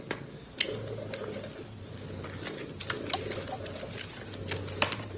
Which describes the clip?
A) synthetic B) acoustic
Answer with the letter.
B